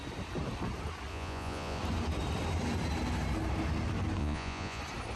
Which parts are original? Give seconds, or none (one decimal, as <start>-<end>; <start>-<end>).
0.0-1.1; 1.8-4.2; 4.8-5.2